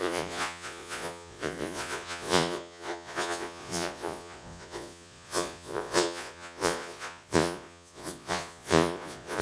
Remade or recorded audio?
remade